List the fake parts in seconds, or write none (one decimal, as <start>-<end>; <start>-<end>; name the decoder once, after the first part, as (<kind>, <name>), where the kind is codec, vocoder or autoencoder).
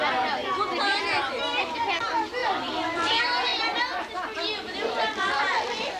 2.4-3.1 (vocoder, BigVGAN v2)